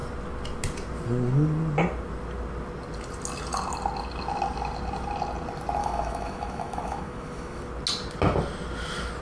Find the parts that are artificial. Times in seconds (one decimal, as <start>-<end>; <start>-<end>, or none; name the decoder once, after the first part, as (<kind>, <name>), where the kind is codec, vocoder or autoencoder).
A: 5.8-7.6 (autoencoder, DAC-VAE)